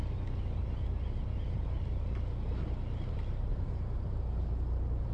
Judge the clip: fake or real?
real